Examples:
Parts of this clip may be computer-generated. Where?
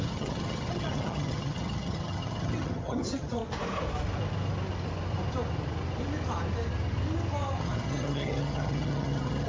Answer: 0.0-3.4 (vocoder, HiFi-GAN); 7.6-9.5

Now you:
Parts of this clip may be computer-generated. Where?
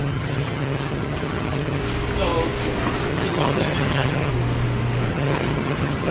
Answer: 0.0-1.8 (vocoder, HiFi-GAN); 3.1-4.3; 5.1-6.1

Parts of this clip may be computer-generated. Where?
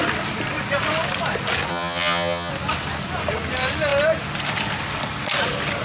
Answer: 1.7-2.5 (vocoder, HiFi-GAN)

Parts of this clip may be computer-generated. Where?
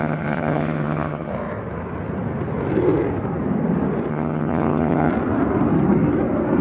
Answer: 0.0-1.3 (vocoder, HiFi-GAN); 4.1-5.1